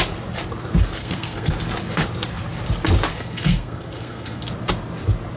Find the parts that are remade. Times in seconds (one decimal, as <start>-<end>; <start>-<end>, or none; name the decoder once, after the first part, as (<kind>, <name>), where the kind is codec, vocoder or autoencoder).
1.0-1.5 (codec, SNAC); 3.1-4.5